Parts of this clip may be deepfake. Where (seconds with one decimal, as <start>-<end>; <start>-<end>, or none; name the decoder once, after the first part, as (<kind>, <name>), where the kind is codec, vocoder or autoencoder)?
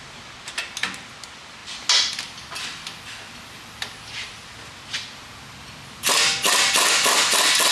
none